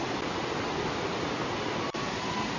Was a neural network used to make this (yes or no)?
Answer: yes